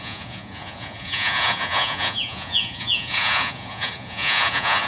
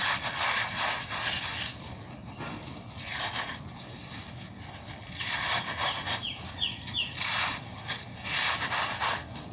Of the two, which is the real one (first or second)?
second